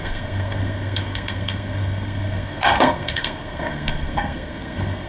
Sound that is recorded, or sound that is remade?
remade